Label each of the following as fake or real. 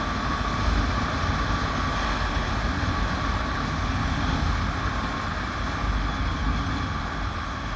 real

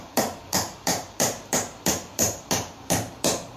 fake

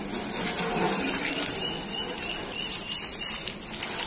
real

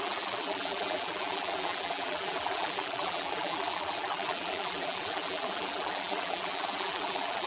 fake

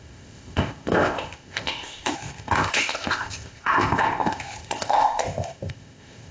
fake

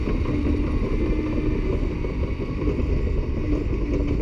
real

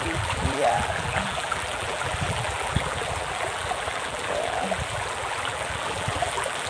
fake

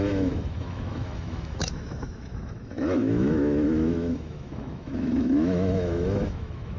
fake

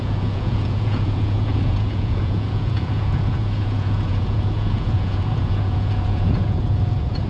fake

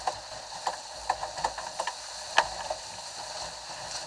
real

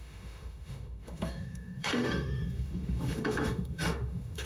fake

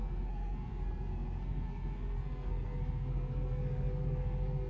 fake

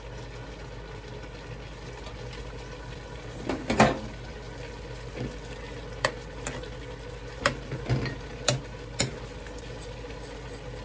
real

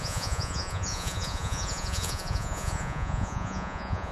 fake